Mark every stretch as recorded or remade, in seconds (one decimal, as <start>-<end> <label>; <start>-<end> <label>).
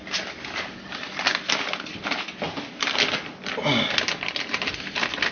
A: 0.0-5.3 recorded